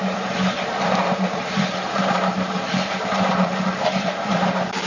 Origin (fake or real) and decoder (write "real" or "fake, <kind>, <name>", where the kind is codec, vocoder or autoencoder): fake, vocoder, BigVGAN v2